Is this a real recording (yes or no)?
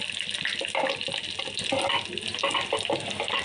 yes